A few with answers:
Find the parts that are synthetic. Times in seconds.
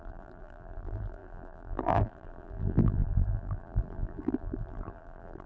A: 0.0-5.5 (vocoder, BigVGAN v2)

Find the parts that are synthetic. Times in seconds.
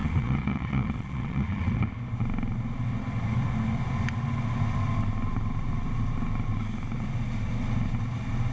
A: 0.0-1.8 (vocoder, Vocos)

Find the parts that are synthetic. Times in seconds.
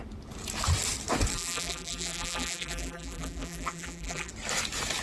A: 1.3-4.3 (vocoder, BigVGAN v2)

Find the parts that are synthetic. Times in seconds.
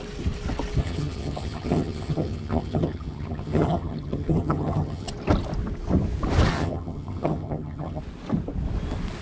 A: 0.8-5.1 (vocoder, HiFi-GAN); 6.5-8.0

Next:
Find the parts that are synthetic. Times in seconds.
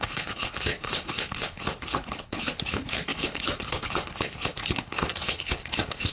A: 0.0-6.1 (codec, HILCodec)